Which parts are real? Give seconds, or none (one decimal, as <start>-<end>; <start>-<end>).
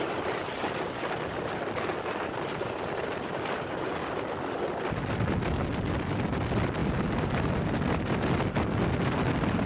0.0-9.7